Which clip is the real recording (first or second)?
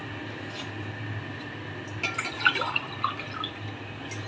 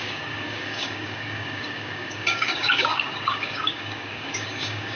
first